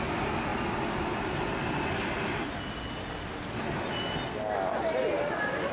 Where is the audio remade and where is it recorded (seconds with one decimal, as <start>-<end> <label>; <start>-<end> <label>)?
0.0-5.7 recorded